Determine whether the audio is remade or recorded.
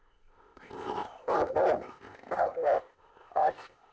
remade